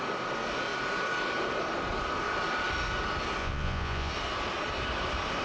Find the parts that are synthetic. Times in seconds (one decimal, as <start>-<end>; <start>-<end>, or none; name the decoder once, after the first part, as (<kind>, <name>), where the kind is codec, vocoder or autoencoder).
3.4-4.1 (vocoder, Vocos)